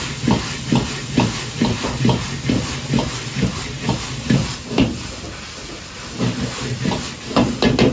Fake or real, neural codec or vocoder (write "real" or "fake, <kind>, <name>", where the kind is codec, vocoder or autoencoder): real